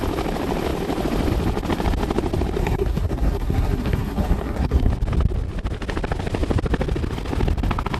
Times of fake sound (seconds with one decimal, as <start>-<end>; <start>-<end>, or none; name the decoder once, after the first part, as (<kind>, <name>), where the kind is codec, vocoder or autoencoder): 2.6-4.9 (codec, SNAC)